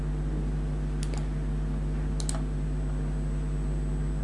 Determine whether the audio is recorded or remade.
recorded